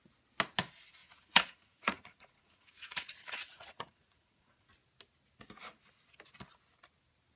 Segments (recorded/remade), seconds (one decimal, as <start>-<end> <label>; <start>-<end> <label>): 0.0-1.0 recorded; 1.0-4.7 remade; 4.7-7.4 recorded